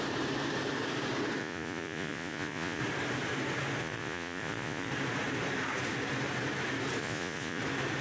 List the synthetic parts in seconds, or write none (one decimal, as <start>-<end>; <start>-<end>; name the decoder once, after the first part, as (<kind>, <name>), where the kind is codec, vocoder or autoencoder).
1.4-2.8 (vocoder, Vocos); 3.8-4.9; 7.0-7.6